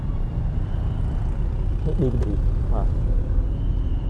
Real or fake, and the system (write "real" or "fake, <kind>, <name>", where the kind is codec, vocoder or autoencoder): real